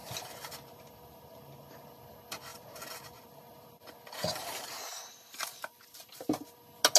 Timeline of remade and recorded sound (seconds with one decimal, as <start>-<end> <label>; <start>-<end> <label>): 0.0-2.0 remade; 2.0-2.5 recorded; 2.5-6.6 remade; 6.6-7.0 recorded